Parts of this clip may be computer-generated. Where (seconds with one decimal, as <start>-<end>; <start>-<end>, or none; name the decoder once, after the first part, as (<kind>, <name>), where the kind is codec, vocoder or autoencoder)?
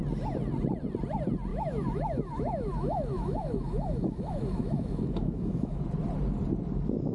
1.5-5.8 (autoencoder, DAC-VAE)